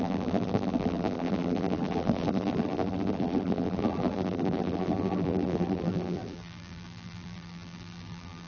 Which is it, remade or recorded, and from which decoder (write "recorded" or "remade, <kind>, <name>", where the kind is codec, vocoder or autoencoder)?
remade, vocoder, BigVGAN v2